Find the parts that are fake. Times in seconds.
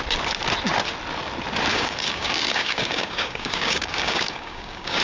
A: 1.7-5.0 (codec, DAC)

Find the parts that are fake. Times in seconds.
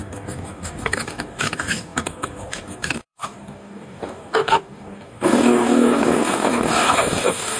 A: 0.0-7.6 (codec, DAC)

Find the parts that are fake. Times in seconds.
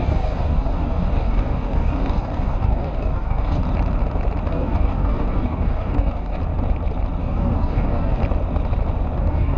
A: 0.0-3.6 (codec, DAC); 4.5-6.4; 7.2-8.2; 9.2-9.6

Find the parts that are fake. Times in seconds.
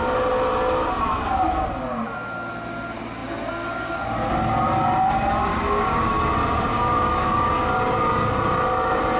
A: 5.5-6.1 (codec, DAC); 6.7-7.5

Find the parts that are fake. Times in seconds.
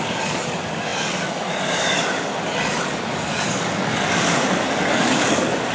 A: 0.0-5.7 (codec, DAC)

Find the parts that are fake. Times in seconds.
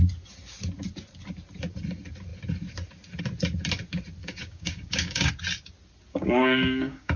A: 4.2-5.3 (codec, DAC); 6.1-7.2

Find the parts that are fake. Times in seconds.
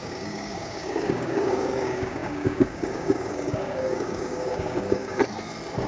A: 0.0-5.2 (codec, DAC)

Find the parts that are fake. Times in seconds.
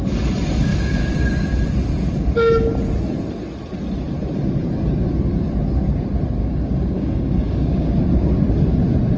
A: 0.7-1.3 (codec, DAC); 6.4-8.0